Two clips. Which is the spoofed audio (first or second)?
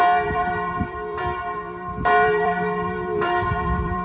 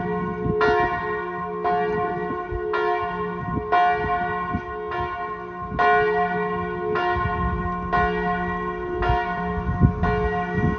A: first